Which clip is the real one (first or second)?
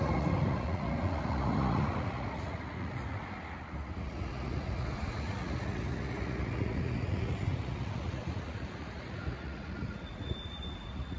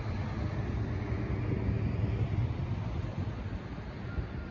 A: second